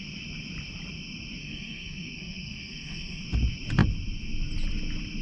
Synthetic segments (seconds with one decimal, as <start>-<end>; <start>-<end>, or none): 1.4-3.2